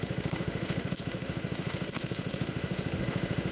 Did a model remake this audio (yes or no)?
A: yes